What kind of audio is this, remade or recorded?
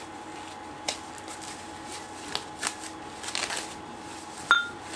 recorded